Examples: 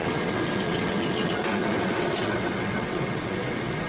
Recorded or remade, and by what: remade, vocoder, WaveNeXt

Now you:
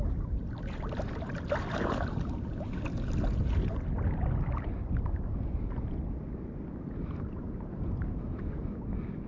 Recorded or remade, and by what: recorded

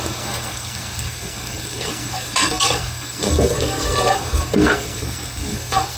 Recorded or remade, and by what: remade, codec, SNAC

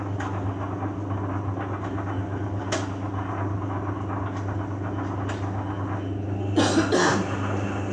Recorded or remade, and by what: recorded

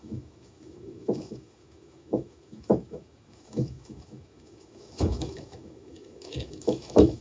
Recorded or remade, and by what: remade, autoencoder, DAC-VAE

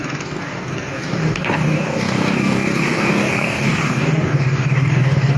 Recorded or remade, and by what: remade, codec, DAC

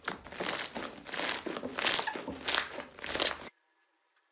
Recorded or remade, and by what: recorded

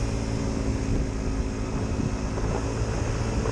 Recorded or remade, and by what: recorded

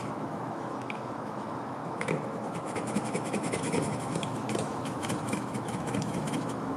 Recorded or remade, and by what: remade, autoencoder, DAC-VAE